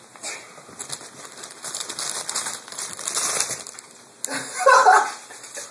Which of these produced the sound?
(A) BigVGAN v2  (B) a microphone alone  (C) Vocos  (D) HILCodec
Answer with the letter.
B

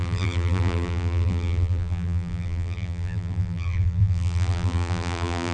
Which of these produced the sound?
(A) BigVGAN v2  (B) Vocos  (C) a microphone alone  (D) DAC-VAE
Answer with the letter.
A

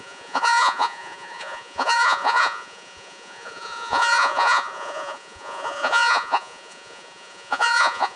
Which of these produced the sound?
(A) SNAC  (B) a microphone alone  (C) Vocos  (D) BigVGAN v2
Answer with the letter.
C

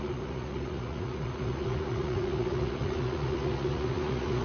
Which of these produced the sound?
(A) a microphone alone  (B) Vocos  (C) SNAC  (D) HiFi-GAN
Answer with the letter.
B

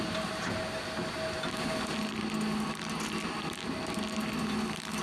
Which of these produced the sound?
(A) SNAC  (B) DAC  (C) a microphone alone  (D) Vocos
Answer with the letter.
C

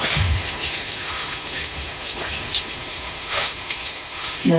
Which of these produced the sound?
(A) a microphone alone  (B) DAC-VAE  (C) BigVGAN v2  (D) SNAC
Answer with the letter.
B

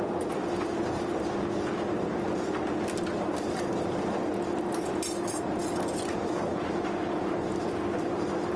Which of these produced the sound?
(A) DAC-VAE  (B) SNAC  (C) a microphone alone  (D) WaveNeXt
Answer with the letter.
C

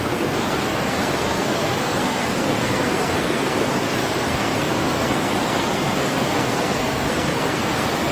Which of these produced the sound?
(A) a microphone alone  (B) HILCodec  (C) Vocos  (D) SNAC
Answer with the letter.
D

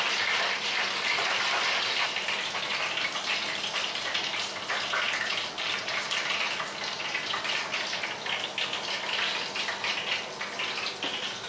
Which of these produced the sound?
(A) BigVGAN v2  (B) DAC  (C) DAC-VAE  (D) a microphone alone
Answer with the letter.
D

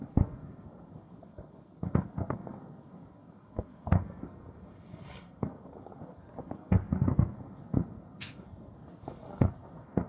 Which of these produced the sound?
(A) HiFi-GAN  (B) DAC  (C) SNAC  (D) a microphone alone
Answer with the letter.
C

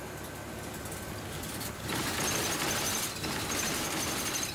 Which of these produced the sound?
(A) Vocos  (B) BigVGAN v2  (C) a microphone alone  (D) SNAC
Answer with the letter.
C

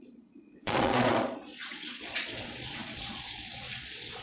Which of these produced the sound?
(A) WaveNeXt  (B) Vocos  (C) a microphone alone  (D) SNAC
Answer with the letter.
B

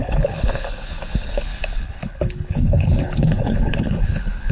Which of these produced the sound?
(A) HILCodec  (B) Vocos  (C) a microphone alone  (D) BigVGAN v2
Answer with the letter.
A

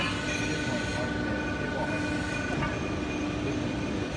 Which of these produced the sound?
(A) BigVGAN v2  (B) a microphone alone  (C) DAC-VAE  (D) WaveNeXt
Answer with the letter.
B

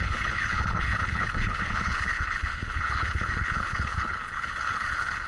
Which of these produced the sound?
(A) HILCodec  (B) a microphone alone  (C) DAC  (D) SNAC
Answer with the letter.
A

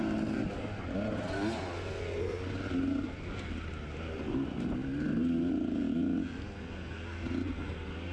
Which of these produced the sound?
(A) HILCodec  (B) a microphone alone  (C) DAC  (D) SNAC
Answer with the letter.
B